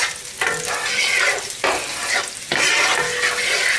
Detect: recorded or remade recorded